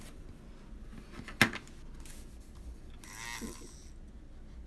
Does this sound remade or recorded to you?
recorded